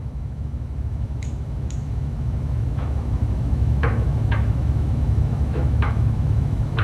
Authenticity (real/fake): fake